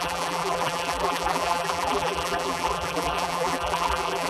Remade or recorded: remade